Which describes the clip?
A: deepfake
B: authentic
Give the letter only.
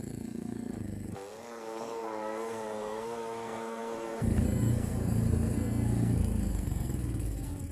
A